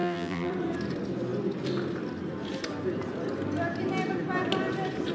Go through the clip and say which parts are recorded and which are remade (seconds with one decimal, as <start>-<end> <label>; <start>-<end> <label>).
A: 0.0-0.5 remade; 0.5-5.1 recorded